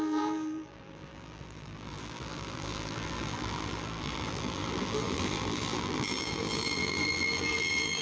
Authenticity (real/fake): fake